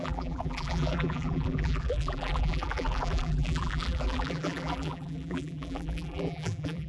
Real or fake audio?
fake